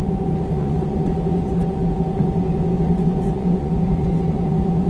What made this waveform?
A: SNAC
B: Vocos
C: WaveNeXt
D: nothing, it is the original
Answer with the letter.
B